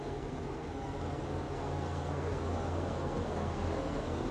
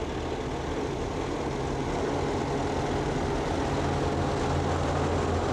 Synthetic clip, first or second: first